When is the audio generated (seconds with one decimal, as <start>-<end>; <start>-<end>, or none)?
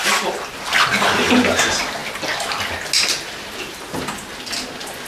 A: 0.0-0.5